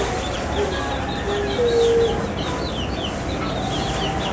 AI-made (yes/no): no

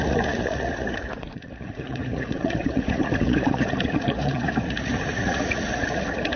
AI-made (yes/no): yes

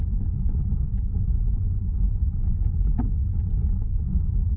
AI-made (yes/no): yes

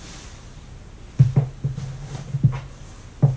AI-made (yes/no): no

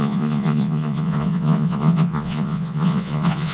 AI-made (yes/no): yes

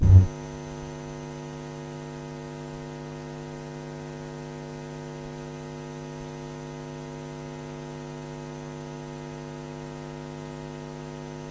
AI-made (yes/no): no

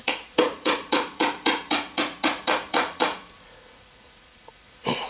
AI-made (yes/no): yes